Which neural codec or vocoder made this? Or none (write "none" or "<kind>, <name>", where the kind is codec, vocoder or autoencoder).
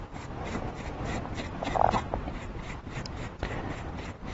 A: none